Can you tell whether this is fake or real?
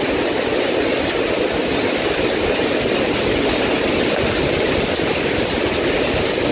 real